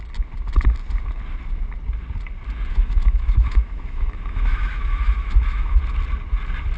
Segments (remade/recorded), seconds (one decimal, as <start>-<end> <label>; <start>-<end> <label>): 0.0-2.7 recorded; 2.7-5.8 remade; 5.8-6.8 recorded